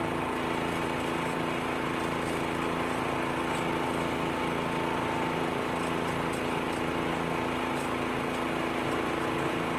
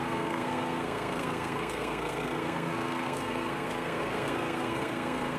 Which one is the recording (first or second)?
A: first